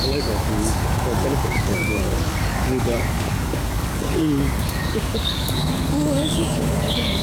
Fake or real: fake